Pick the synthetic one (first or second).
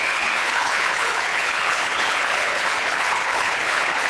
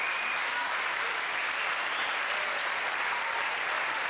first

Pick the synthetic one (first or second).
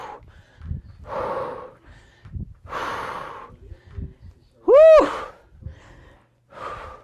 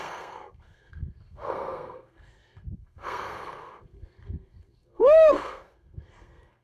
second